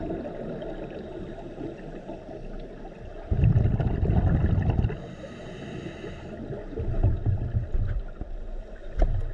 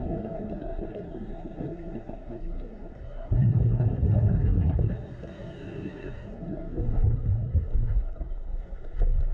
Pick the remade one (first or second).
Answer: second